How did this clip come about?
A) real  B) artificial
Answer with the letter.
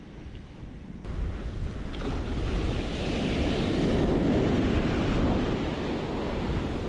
A